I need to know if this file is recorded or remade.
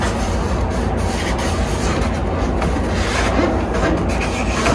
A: recorded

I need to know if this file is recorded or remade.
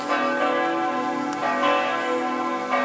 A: recorded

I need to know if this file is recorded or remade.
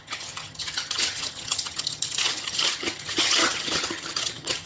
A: remade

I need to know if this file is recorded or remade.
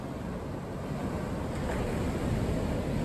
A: recorded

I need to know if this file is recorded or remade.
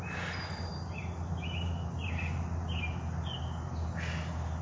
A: recorded